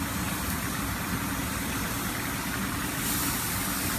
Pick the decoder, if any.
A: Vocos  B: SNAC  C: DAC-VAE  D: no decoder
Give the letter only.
D